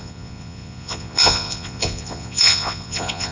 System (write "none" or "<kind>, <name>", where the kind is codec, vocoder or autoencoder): vocoder, Vocos